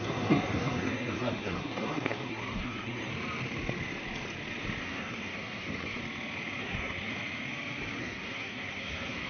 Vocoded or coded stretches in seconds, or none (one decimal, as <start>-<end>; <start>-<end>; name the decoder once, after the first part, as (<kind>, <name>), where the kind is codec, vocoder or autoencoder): 0.0-3.1 (codec, SNAC); 4.8-6.0; 6.6-7.1; 8.0-9.3